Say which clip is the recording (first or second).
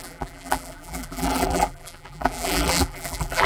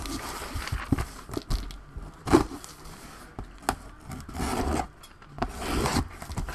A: second